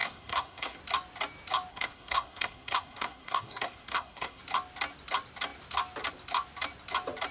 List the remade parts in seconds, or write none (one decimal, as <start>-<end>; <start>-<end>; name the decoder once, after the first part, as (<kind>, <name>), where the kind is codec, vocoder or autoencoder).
0.0-0.8 (codec, SNAC); 1.7-4.4